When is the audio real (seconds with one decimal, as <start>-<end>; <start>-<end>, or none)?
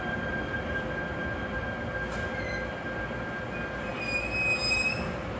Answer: 0.0-5.4